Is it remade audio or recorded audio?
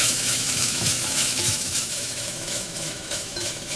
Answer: remade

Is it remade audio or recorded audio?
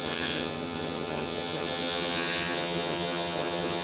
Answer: remade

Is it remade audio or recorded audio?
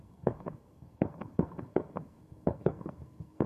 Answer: remade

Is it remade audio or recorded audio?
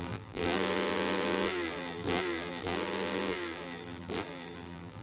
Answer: remade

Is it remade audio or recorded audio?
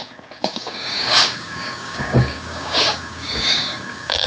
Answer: remade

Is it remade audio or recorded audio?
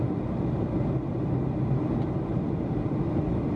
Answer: recorded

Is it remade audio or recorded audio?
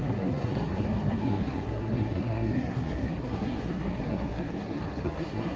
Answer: remade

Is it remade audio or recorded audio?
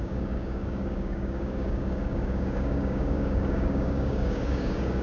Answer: remade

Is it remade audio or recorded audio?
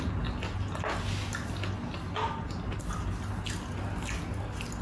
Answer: recorded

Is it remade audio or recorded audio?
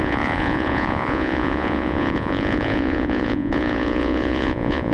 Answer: remade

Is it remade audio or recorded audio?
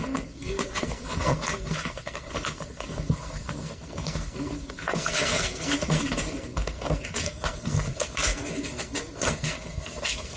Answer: remade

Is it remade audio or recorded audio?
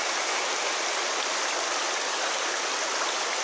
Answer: recorded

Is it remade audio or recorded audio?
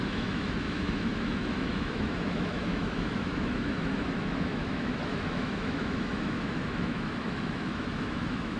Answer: remade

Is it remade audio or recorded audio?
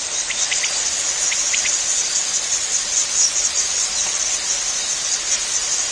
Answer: recorded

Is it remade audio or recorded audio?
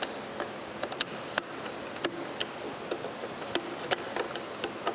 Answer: recorded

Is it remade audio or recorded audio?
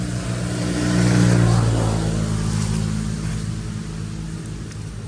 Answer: recorded